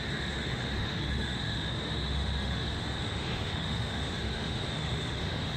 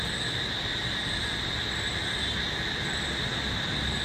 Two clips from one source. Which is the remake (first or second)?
first